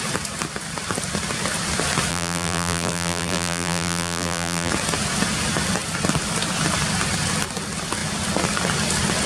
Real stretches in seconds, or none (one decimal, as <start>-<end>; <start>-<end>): 0.0-2.1; 4.7-9.3